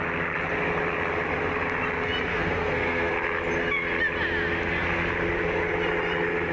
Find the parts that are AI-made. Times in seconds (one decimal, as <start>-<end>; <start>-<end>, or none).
2.3-3.1